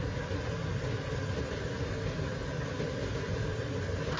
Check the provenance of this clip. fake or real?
real